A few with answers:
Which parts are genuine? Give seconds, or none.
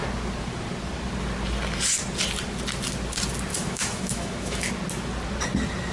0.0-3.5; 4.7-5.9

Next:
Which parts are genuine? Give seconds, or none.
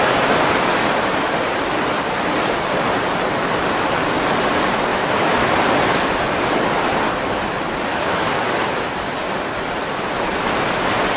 0.0-4.9; 5.5-7.9; 8.4-11.2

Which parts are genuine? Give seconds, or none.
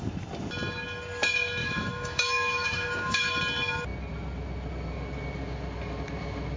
0.0-1.6; 3.4-6.6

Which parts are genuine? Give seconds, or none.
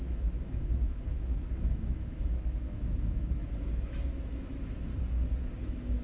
4.9-5.6